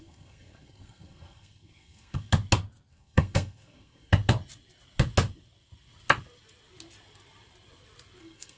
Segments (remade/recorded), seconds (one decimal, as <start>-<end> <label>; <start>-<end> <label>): 0.0-2.3 remade; 2.3-2.9 recorded; 2.9-4.1 remade; 4.1-8.2 recorded; 8.2-8.6 remade